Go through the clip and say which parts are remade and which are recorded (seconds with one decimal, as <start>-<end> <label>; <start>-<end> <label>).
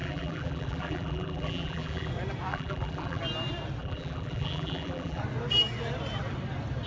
0.0-2.1 remade; 2.1-2.5 recorded; 2.5-3.2 remade; 3.2-3.8 recorded; 3.8-5.2 remade; 5.2-6.9 recorded